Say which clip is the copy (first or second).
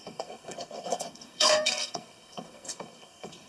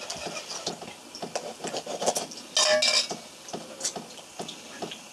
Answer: first